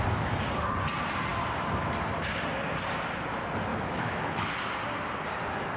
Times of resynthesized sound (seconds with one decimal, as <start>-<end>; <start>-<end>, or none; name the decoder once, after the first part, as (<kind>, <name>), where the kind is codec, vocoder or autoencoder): 3.7-4.5 (autoencoder, DAC-VAE)

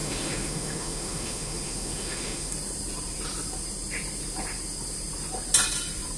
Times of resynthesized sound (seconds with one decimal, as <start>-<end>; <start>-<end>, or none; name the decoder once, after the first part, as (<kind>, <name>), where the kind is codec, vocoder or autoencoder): 0.0-2.5 (autoencoder, DAC-VAE)

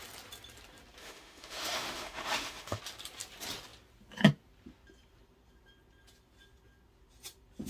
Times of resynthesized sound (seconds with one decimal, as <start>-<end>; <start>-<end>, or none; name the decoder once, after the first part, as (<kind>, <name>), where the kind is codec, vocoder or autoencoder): 1.0-2.8 (autoencoder, DAC-VAE)